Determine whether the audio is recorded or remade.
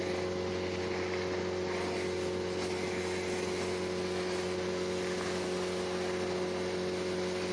recorded